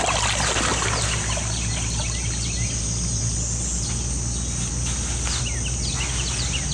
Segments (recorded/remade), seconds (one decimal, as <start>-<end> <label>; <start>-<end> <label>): 0.0-6.7 recorded